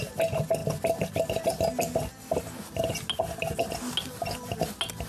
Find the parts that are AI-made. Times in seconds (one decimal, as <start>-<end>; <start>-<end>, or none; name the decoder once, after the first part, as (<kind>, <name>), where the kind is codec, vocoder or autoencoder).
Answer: none